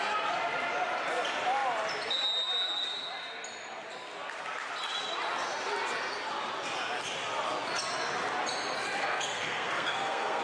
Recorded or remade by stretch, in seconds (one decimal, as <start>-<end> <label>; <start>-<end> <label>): 0.0-9.0 recorded; 9.0-10.4 remade